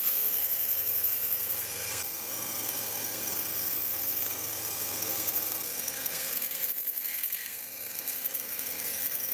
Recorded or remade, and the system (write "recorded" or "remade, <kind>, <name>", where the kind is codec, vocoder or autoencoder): remade, codec, SNAC